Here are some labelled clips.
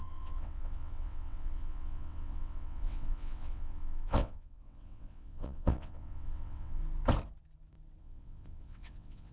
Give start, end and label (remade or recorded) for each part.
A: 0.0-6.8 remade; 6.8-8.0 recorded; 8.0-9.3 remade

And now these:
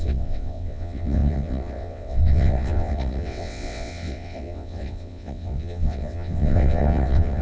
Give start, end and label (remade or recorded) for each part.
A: 0.0-7.4 remade